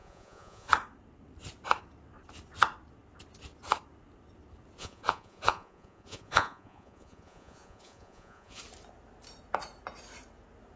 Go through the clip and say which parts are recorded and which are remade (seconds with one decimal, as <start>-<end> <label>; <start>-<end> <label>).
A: 0.0-0.7 remade; 0.7-4.8 recorded; 4.8-8.6 remade; 8.6-10.8 recorded